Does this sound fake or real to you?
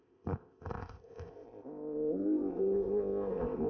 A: fake